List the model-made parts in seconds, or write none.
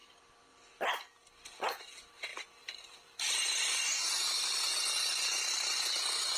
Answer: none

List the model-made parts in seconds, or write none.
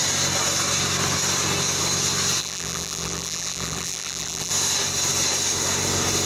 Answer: 2.4-4.5 (vocoder, BigVGAN v2)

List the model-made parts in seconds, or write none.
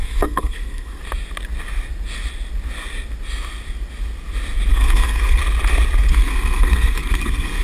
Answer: 0.0-1.0 (codec, SNAC); 4.7-5.4; 6.1-7.6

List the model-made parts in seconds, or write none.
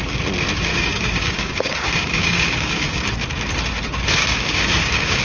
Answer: 0.7-3.1 (codec, DAC); 4.2-5.2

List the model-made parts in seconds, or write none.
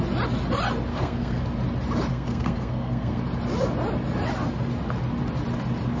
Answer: 0.9-1.4 (codec, SNAC); 2.1-3.2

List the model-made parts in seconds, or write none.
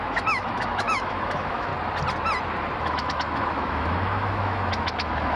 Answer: 0.0-1.7 (autoencoder, DAC-VAE); 2.8-5.4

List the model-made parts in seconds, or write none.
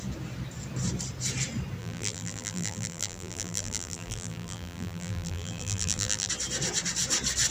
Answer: 1.8-6.3 (vocoder, BigVGAN v2)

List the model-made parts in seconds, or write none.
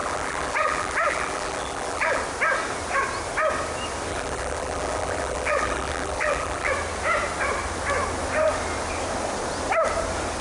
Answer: 0.0-2.2 (vocoder, BigVGAN v2); 4.1-6.7